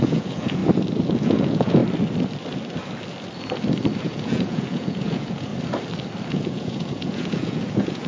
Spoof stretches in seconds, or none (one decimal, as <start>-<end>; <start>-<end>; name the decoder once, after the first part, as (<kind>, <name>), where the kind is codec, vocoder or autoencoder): 0.0-0.6 (vocoder, Vocos); 1.2-1.8; 4.0-5.5; 6.3-8.1